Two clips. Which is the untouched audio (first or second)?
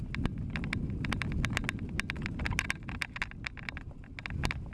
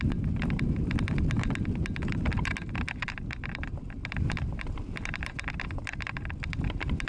first